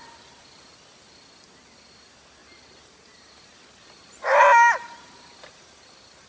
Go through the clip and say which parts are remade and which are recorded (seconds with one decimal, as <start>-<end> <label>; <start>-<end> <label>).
0.0-2.4 recorded; 2.4-6.3 remade